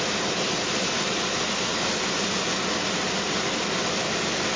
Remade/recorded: recorded